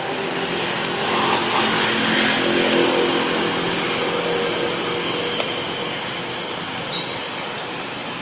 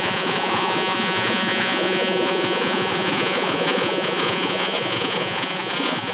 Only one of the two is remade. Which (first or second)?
second